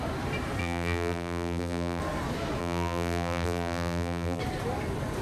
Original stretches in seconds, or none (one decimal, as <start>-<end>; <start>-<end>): 0.0-0.6; 2.0-2.6; 4.4-5.2